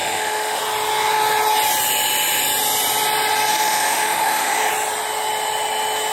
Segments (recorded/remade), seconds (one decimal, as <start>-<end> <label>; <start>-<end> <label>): 0.0-0.6 remade; 0.6-3.5 recorded; 3.5-4.7 remade; 4.7-6.1 recorded